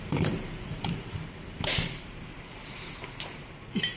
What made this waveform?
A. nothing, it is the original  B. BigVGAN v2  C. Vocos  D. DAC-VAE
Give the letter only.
B